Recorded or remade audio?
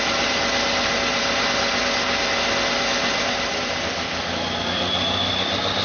recorded